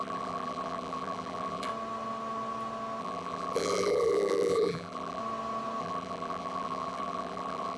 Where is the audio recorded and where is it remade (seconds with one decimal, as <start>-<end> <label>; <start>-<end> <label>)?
0.0-1.7 remade; 1.7-3.0 recorded; 3.0-5.2 remade; 5.2-5.8 recorded; 5.8-7.8 remade